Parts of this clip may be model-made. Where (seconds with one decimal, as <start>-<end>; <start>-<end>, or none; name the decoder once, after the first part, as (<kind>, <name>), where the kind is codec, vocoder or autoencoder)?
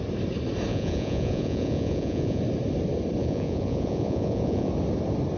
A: 0.7-2.4 (vocoder, Vocos); 3.2-4.7